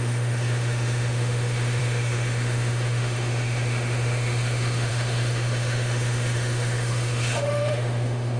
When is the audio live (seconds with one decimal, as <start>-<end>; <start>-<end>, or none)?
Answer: none